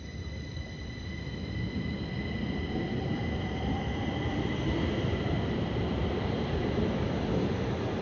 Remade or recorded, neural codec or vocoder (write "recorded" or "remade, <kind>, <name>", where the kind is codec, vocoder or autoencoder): remade, vocoder, BigVGAN v2